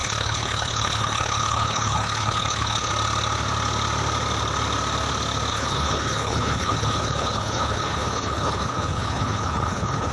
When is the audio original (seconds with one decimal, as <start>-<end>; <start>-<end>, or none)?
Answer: 2.9-5.5

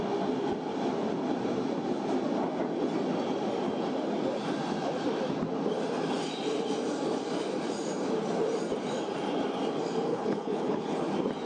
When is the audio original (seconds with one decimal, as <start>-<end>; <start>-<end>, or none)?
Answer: 0.0-10.1; 11.0-11.5

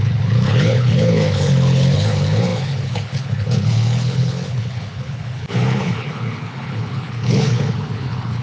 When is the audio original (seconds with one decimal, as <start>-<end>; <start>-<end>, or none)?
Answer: none

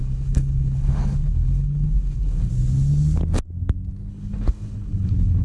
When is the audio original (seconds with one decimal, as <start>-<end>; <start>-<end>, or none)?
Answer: 2.5-4.1

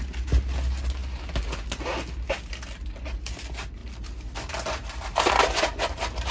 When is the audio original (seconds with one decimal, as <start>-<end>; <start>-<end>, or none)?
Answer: 0.0-6.3